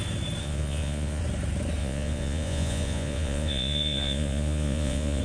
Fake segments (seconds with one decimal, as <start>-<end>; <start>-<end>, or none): 0.4-1.2; 1.8-5.2